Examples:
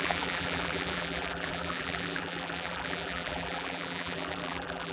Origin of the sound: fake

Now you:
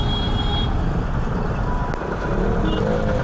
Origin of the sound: real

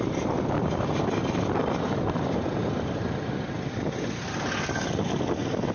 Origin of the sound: real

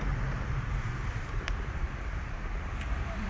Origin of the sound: fake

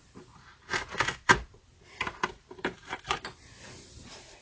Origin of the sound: fake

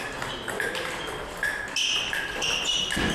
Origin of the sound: real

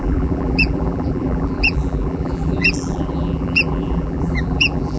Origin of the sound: fake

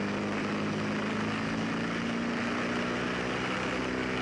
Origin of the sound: real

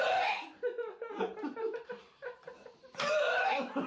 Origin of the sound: fake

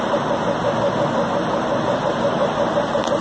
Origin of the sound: real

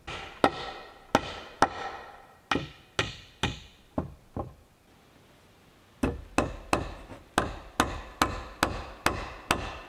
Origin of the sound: real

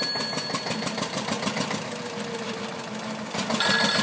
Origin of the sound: fake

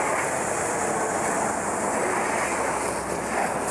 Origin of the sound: real